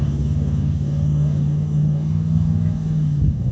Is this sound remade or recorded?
remade